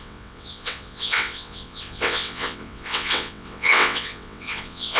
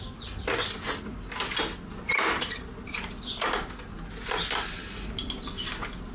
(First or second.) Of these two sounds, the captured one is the second